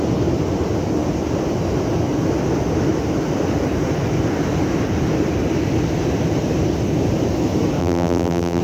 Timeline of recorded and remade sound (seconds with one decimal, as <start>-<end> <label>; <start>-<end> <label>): 0.0-7.8 recorded; 7.8-8.6 remade